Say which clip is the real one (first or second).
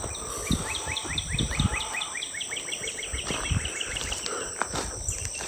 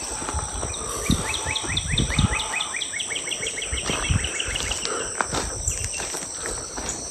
second